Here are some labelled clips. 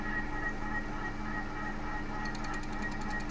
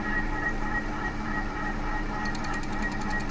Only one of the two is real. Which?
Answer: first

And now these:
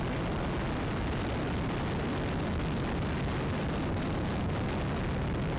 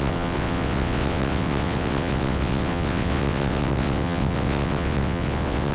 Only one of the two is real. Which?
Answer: first